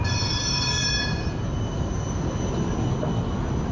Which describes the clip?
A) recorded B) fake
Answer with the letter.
A